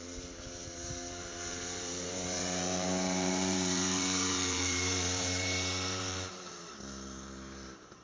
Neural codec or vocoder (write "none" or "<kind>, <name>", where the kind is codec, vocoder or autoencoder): vocoder, BigVGAN v2